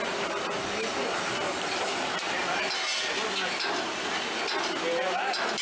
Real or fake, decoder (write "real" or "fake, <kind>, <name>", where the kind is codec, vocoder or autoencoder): real